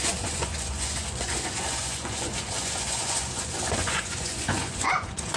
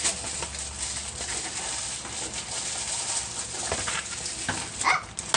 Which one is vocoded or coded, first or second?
first